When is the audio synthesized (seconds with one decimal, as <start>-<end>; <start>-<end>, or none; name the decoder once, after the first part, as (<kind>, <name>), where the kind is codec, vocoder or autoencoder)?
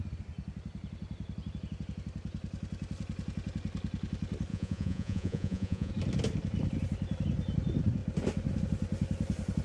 4.5-5.9 (vocoder, Vocos)